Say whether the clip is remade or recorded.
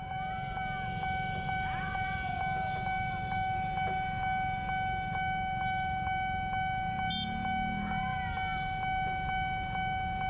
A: recorded